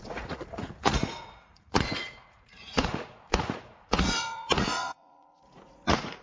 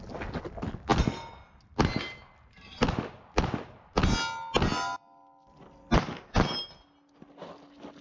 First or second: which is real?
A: second